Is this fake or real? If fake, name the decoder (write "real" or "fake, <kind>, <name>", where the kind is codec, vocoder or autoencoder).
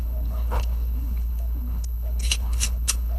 fake, codec, HILCodec